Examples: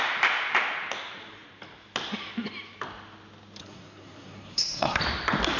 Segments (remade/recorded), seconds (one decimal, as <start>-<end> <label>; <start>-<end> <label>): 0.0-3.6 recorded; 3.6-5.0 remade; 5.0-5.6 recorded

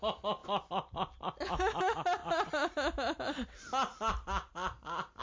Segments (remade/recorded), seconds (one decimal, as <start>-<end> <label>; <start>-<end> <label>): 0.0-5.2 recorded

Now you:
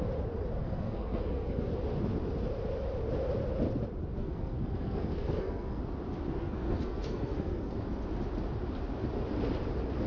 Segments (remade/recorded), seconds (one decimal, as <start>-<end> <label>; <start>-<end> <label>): 0.0-0.6 recorded; 0.6-1.7 remade; 1.7-4.1 recorded; 4.1-5.8 remade; 5.8-6.4 recorded; 6.4-7.7 remade; 7.7-10.1 recorded

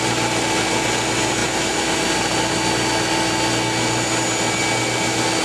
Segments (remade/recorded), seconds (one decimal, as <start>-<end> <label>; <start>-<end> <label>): 0.0-5.4 recorded